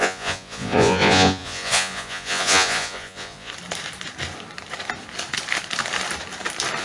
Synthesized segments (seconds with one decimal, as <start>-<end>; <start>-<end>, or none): 0.0-3.5